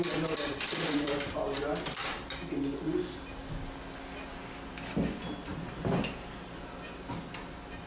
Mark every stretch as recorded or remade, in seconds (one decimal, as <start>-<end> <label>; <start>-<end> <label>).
0.0-2.0 remade; 2.0-4.6 recorded; 4.6-5.5 remade; 5.5-7.2 recorded; 7.2-7.9 remade